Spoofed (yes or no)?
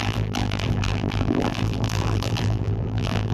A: yes